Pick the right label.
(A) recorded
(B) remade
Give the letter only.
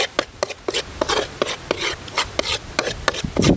A